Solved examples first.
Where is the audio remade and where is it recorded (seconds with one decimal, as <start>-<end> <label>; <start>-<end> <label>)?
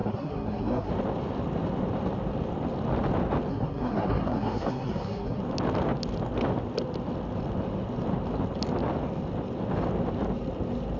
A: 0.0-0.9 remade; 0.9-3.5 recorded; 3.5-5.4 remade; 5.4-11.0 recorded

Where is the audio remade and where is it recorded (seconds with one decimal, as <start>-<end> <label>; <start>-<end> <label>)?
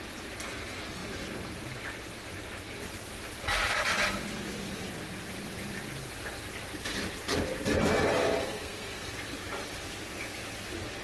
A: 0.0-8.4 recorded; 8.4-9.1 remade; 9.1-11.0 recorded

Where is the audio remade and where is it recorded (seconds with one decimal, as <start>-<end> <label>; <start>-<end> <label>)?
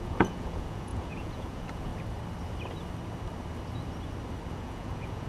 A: 0.0-1.9 remade; 1.9-4.5 recorded; 4.5-5.3 remade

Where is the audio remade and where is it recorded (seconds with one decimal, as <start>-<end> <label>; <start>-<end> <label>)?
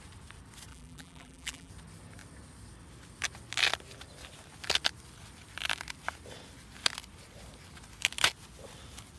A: 0.0-0.7 recorded; 0.7-1.7 remade; 1.7-9.2 recorded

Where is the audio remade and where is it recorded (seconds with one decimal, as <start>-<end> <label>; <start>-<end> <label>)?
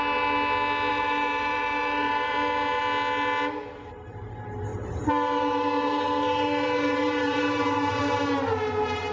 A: 0.0-0.9 recorded; 0.9-2.8 remade; 2.8-4.7 recorded; 4.7-8.0 remade; 8.0-9.1 recorded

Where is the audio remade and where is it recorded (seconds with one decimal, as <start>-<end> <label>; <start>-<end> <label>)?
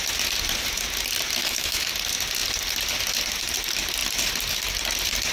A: 0.0-1.4 recorded; 1.4-1.9 remade; 1.9-5.3 recorded